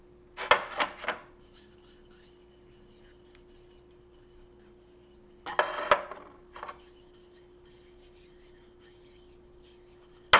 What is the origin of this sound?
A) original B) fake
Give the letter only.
A